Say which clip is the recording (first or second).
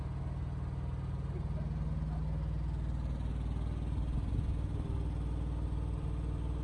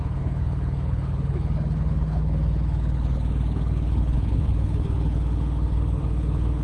first